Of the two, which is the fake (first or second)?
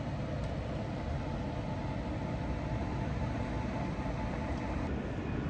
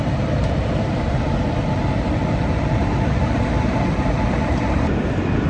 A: second